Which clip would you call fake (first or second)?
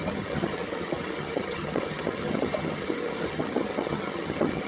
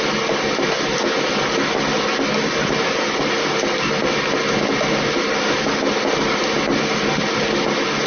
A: first